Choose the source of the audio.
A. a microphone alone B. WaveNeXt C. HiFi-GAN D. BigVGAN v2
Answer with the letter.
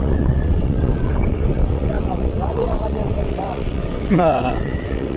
B